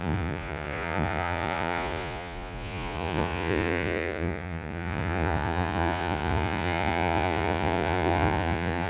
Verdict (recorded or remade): remade